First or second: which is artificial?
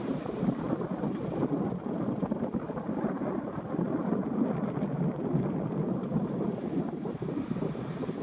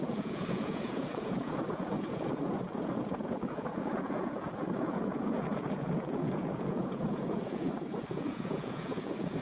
second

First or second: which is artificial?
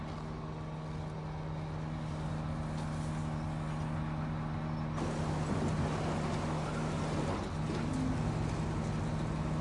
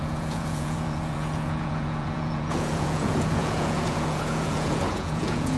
second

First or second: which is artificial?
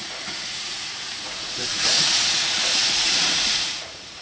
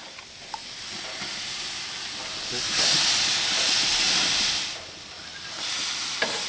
first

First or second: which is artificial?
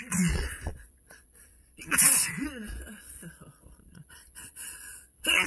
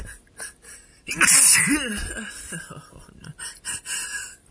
first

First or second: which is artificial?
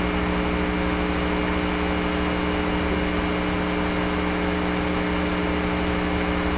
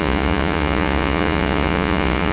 second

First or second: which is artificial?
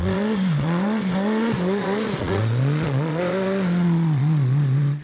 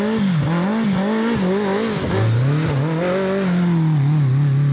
first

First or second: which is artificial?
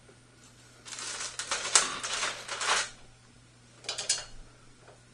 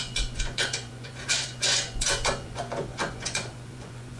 second